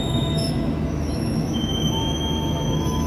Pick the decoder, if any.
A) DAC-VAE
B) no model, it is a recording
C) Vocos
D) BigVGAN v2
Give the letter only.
A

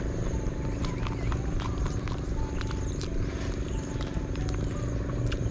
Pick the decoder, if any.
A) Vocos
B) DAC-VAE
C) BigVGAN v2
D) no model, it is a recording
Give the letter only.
C